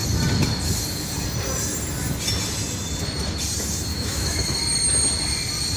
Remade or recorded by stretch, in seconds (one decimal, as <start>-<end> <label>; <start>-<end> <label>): 0.0-3.9 recorded; 3.9-4.6 remade; 4.6-5.8 recorded